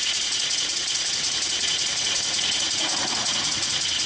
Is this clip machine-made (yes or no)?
yes